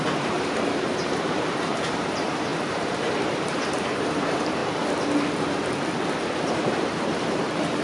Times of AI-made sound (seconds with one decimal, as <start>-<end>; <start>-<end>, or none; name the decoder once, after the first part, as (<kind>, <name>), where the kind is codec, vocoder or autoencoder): 0.0-4.6 (vocoder, BigVGAN v2); 6.5-7.8

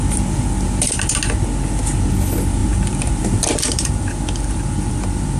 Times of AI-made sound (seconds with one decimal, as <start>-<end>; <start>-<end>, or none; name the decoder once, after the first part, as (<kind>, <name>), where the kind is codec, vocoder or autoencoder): 2.6-4.0 (vocoder, BigVGAN v2)

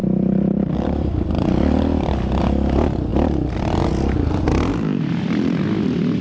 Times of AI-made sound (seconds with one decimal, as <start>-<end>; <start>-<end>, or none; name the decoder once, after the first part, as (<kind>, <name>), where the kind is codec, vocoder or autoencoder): 0.0-2.4 (vocoder, BigVGAN v2)

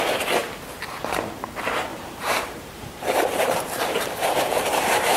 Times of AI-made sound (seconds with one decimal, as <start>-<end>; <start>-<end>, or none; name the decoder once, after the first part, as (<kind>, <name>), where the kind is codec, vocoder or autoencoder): 1.9-5.2 (vocoder, BigVGAN v2)

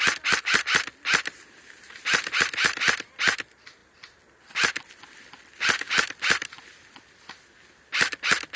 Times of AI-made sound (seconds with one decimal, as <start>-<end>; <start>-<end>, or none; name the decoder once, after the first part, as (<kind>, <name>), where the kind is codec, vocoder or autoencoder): none

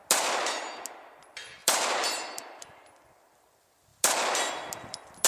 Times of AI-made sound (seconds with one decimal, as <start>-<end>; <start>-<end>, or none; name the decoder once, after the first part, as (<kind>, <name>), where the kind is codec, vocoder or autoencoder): 1.6-2.1 (vocoder, BigVGAN v2)

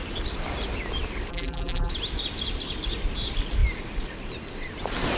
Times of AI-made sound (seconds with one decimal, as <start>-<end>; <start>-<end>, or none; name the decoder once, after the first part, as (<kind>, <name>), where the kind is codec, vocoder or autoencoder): 1.3-1.9 (vocoder, BigVGAN v2)

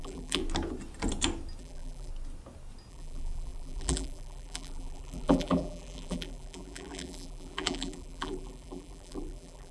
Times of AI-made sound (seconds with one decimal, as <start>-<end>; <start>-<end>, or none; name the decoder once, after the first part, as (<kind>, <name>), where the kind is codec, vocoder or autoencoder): 0.0-0.4 (vocoder, BigVGAN v2); 1.6-2.1; 2.9-9.7